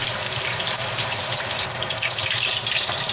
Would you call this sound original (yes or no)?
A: no